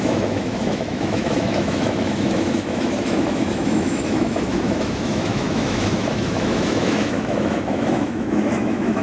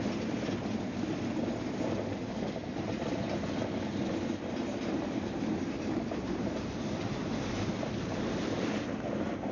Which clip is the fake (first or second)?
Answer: first